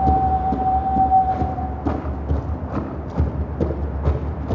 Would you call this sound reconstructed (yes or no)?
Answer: no